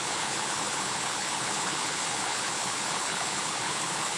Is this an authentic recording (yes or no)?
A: no